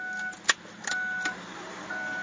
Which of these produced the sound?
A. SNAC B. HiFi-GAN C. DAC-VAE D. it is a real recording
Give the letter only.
D